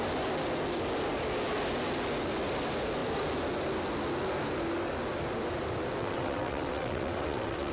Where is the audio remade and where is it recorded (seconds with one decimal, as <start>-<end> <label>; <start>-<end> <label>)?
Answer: 0.0-6.0 recorded; 6.0-7.7 remade